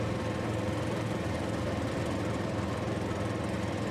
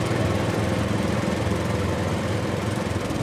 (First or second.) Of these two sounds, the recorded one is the first